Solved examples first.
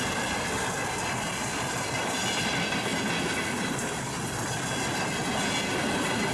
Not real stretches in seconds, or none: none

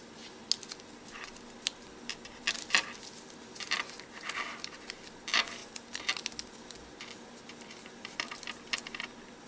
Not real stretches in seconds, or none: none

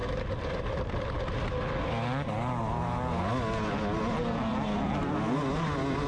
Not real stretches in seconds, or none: none

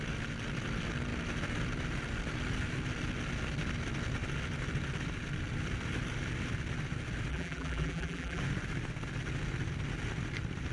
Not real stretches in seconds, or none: 7.3-8.4 (vocoder, BigVGAN v2)

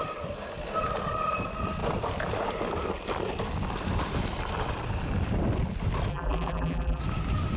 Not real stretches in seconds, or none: 6.1-7.0 (vocoder, BigVGAN v2)

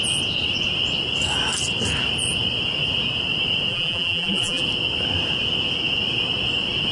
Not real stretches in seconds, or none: 3.7-4.6 (vocoder, BigVGAN v2)

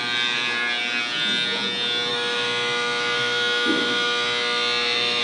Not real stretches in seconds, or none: 2.1-5.2 (autoencoder, DAC-VAE)